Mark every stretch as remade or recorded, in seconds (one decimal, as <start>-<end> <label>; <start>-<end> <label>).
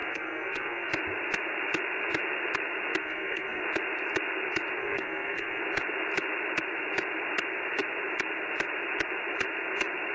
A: 0.0-0.9 remade; 0.9-3.0 recorded; 3.0-3.6 remade; 3.6-4.8 recorded; 4.8-5.6 remade; 5.6-10.1 recorded